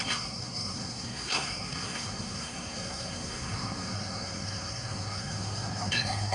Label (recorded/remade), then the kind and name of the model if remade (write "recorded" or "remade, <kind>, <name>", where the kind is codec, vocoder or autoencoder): remade, codec, SNAC